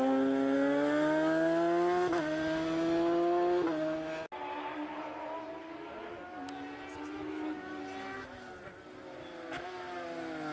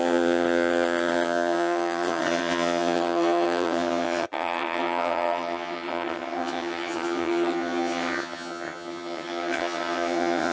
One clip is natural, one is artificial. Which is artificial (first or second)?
second